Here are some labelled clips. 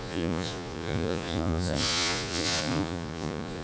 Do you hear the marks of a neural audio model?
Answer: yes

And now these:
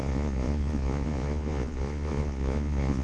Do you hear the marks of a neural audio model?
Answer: yes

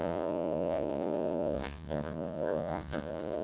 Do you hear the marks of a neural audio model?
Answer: yes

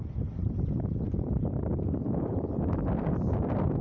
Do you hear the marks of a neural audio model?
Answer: no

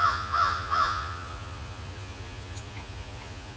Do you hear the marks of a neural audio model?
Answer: yes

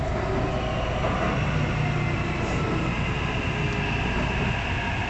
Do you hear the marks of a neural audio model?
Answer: no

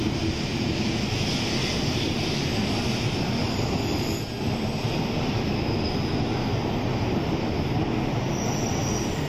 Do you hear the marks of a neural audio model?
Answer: no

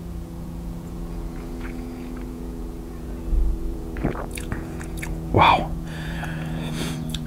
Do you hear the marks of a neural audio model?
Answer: yes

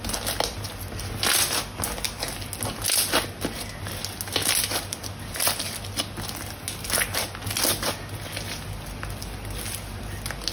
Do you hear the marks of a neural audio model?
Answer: no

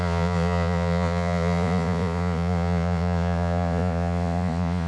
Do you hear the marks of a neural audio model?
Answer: yes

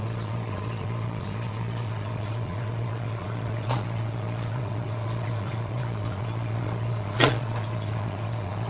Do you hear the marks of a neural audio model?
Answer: yes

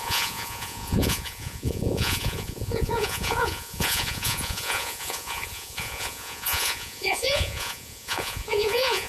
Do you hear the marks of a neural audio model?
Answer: yes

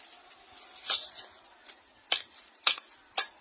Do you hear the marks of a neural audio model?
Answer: no